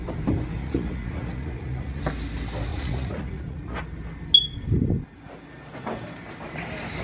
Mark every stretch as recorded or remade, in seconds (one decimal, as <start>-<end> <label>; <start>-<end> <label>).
0.0-0.6 recorded; 0.6-2.0 remade; 2.0-2.7 recorded; 2.7-3.8 remade; 3.8-7.0 recorded